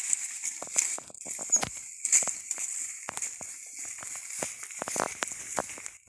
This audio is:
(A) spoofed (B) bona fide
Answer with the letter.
B